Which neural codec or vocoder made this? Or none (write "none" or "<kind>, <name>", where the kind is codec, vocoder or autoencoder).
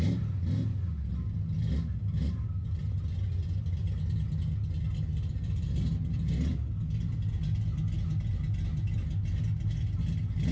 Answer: none